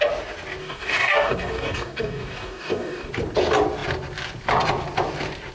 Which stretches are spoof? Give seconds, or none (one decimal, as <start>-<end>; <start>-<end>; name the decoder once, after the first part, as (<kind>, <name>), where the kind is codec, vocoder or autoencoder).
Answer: 0.6-3.1 (codec, DAC)